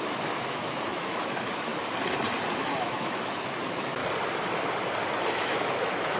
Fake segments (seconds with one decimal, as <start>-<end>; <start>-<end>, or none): 0.0-1.7; 2.6-4.0; 5.3-6.2